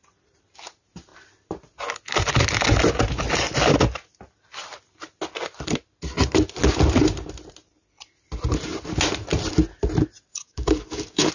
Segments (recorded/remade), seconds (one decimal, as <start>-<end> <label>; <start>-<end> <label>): 0.0-10.3 recorded; 10.3-11.3 remade